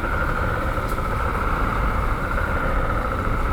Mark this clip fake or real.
real